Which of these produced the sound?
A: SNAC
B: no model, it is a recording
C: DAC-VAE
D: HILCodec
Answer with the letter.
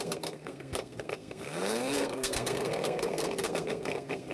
A